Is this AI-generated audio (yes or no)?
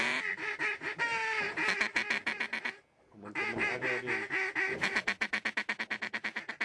no